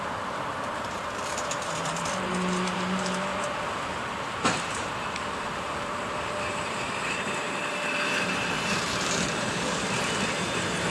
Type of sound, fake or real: fake